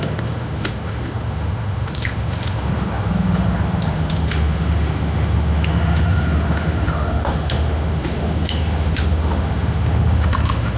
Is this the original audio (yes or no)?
no